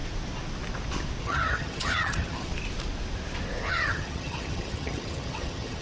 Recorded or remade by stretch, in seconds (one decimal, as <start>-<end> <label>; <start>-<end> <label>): 0.0-1.2 recorded; 1.2-2.5 remade; 2.5-3.7 recorded; 3.7-5.8 remade